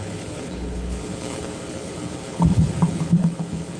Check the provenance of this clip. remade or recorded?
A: remade